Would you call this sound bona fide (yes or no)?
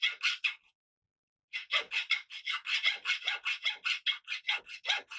yes